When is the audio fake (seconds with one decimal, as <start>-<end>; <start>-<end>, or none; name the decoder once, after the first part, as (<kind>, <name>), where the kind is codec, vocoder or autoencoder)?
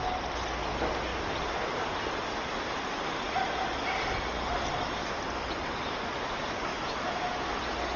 6.7-7.5 (autoencoder, DAC-VAE)